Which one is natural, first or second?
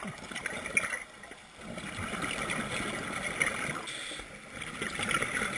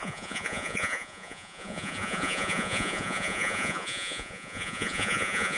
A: first